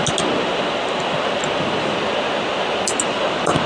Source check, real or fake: real